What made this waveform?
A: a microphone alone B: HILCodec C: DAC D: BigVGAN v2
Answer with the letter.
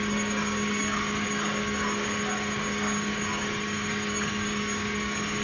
C